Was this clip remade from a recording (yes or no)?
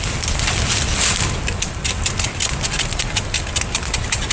no